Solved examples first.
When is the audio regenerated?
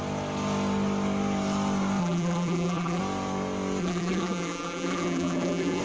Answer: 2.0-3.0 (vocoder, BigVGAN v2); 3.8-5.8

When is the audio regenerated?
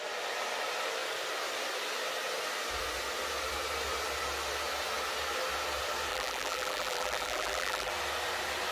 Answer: 6.1-7.9 (vocoder, BigVGAN v2)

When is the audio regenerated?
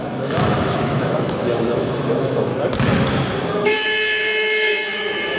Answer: 0.0-2.5 (autoencoder, DAC-VAE); 3.5-5.4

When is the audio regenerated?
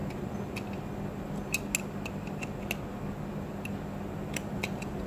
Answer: none